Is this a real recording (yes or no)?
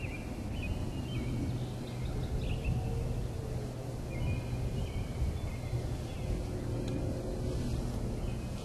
yes